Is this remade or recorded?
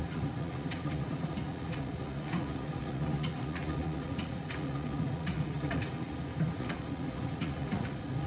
remade